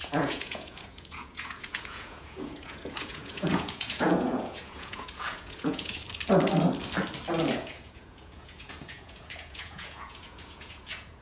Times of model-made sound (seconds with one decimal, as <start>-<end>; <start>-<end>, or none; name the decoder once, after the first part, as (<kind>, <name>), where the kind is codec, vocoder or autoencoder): 0.0-6.0 (vocoder, Vocos); 7.5-11.2

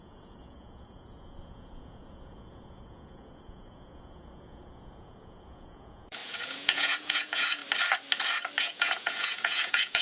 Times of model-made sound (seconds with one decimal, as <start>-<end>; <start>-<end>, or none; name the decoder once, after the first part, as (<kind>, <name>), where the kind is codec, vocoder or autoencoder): 0.0-7.6 (vocoder, Vocos); 8.6-10.0